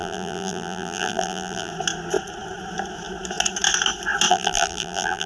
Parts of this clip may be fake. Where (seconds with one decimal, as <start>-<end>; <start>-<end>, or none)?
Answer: 0.0-1.7; 4.3-5.3